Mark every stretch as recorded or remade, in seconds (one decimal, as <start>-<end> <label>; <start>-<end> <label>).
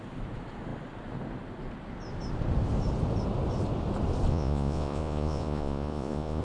0.0-4.3 recorded; 4.3-6.4 remade